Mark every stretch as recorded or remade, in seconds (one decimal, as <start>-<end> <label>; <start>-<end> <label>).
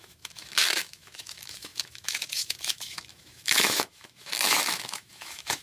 0.0-5.6 remade